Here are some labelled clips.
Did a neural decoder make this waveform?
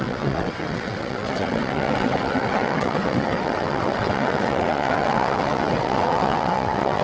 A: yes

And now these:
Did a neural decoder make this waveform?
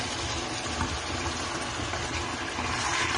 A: no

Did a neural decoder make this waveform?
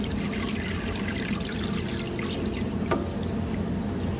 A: no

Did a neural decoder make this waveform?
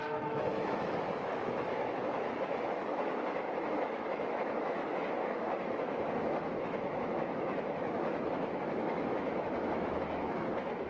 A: yes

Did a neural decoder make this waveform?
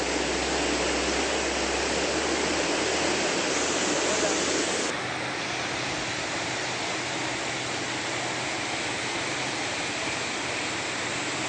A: no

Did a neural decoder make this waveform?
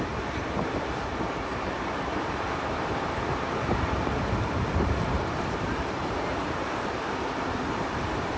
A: yes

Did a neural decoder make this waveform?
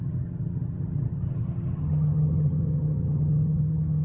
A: yes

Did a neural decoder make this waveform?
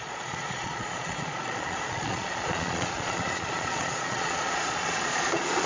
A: yes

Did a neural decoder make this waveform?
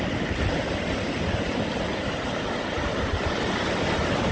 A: no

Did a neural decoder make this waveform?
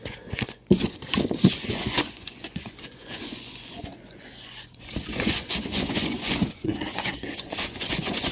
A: yes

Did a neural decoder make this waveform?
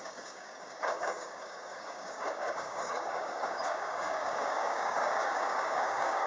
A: yes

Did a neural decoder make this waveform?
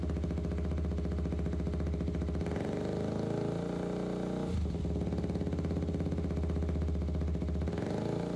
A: no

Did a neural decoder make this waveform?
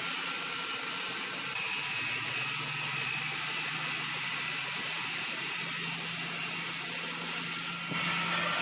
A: no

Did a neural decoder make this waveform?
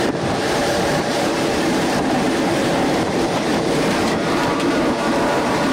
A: yes